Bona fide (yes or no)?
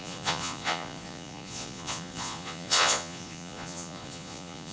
no